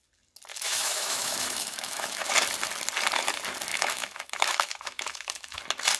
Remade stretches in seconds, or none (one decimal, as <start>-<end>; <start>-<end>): 0.5-2.3; 3.7-5.6